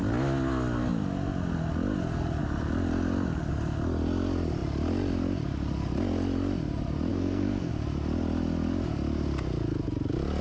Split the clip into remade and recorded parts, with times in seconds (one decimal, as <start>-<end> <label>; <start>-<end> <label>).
0.0-7.1 recorded; 7.1-7.7 remade; 7.7-10.4 recorded